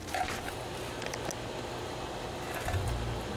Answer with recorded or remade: recorded